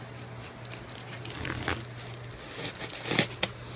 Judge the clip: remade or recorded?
recorded